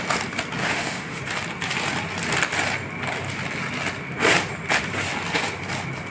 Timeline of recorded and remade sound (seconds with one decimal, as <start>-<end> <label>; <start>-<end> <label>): 0.0-0.6 recorded; 0.6-1.2 remade; 1.2-6.1 recorded